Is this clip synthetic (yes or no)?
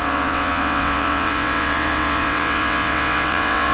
yes